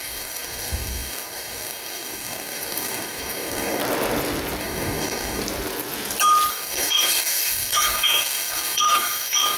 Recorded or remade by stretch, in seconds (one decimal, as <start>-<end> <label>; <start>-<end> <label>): 0.0-3.8 remade; 3.8-4.6 recorded; 4.6-5.4 remade; 5.4-6.5 recorded; 6.5-9.6 remade